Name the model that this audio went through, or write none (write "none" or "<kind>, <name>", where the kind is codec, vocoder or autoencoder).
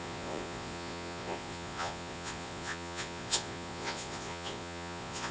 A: vocoder, Vocos